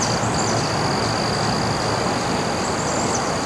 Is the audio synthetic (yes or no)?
no